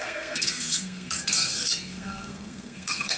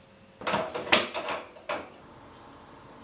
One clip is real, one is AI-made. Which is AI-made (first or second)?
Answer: first